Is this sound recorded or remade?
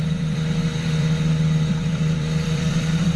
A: remade